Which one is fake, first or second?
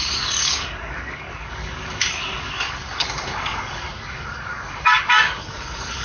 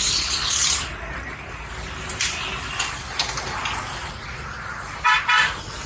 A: first